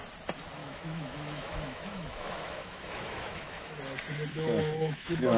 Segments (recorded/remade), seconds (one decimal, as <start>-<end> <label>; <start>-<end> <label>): 0.0-0.6 recorded; 0.6-3.8 remade; 3.8-4.3 recorded; 4.3-5.4 remade